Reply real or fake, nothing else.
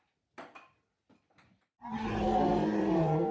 real